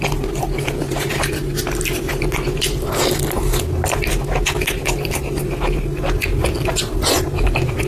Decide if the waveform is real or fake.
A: real